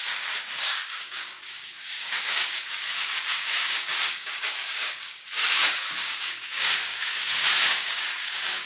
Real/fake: fake